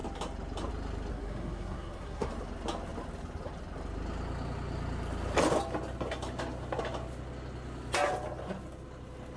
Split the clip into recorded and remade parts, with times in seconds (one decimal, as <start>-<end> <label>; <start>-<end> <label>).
0.0-1.1 recorded; 1.1-2.3 remade; 2.3-9.4 recorded

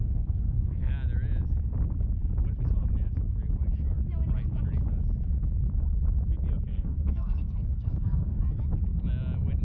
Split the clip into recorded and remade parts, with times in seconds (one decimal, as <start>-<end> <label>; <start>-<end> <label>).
0.0-0.9 remade; 0.9-6.7 recorded; 6.7-8.4 remade; 8.4-9.6 recorded

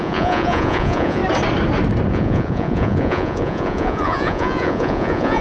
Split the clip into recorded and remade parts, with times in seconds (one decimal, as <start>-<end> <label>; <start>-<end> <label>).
0.0-1.2 remade; 1.2-2.1 recorded; 2.1-5.4 remade

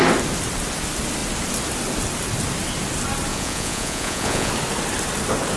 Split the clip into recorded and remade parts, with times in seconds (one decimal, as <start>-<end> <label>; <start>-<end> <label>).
0.0-3.3 recorded; 3.3-4.5 remade; 4.5-5.6 recorded